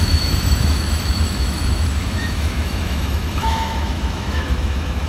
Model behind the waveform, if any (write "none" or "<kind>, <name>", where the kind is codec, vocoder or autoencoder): autoencoder, DAC-VAE